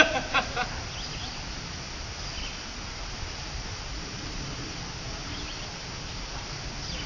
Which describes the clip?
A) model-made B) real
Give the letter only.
B